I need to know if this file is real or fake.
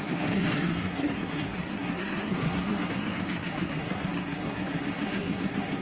fake